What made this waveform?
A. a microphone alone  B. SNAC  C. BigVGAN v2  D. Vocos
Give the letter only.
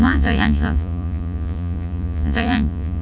D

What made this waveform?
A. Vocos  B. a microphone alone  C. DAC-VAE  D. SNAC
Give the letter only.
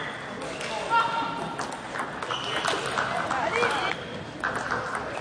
B